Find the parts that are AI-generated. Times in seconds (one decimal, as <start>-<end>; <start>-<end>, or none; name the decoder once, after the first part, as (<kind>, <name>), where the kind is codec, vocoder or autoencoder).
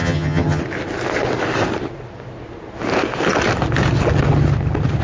0.0-0.6 (vocoder, HiFi-GAN)